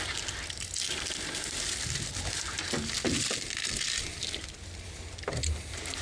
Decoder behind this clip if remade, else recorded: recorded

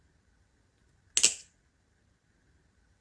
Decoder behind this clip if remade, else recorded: recorded